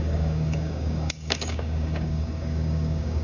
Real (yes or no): no